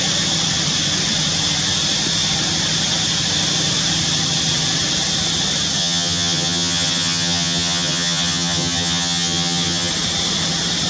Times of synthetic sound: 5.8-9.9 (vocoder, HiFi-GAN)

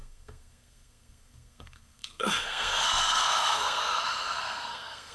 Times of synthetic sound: 0.0-5.1 (codec, SNAC)

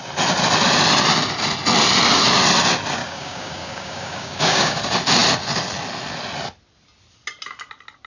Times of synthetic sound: 3.0-4.8 (codec, DAC)

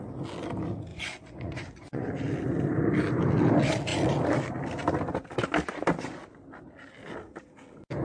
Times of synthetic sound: 0.9-2.1 (vocoder, Vocos)

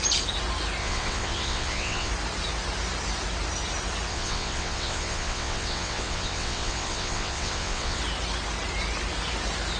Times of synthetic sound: 0.8-2.1 (vocoder, WaveNeXt); 4.1-8.0